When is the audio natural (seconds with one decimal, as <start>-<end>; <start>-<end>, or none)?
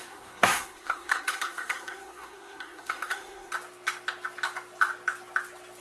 3.5-5.8